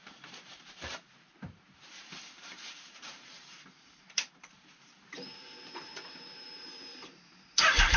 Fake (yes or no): yes